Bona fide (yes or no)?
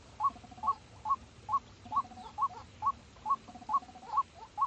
yes